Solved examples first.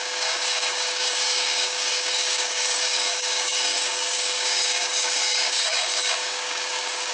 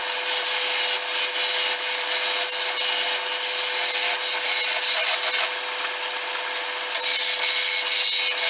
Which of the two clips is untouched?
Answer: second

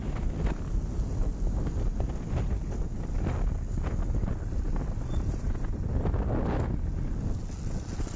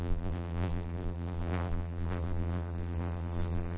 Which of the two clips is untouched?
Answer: first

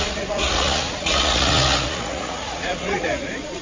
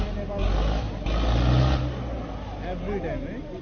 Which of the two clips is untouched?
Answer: second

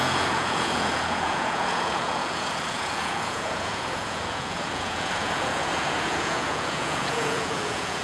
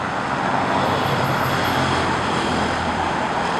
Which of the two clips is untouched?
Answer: second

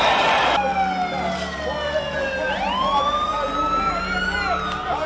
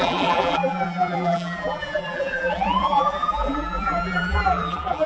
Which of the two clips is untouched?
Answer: first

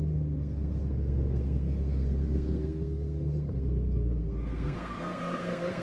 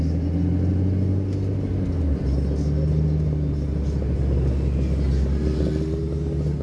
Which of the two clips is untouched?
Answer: second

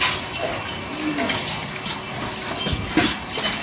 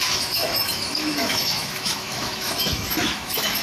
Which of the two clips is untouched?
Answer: first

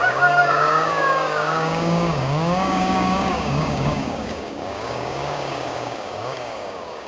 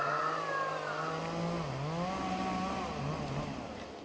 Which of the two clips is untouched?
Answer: second